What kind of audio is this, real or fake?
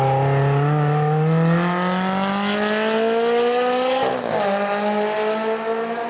real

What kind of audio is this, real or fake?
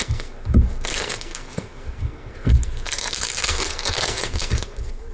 fake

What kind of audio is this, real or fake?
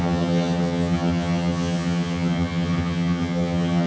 fake